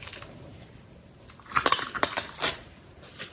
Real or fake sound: fake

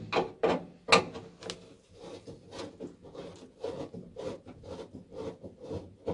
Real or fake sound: real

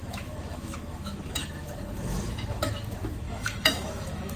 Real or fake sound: fake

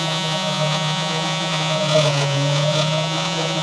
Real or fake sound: fake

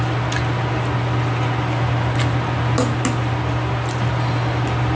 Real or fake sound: real